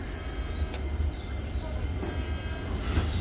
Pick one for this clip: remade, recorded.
recorded